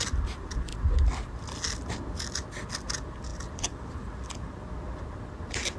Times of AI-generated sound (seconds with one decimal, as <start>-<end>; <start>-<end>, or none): 3.3-3.9